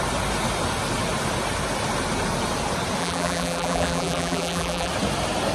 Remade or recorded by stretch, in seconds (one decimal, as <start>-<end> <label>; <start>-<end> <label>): 0.0-3.0 recorded; 3.0-4.9 remade; 4.9-5.5 recorded